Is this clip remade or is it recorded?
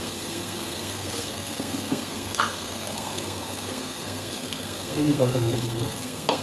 remade